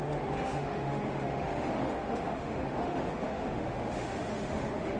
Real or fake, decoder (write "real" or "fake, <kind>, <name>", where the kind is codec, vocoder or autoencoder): fake, autoencoder, DAC-VAE